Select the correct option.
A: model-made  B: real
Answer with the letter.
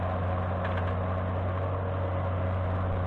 B